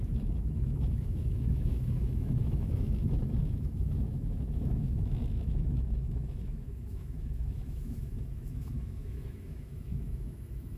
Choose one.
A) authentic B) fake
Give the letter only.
B